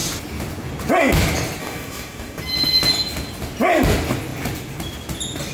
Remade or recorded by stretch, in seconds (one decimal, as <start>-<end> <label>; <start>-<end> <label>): 0.0-1.6 recorded; 1.6-2.4 remade; 2.4-5.5 recorded